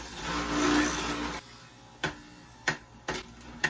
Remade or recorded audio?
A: recorded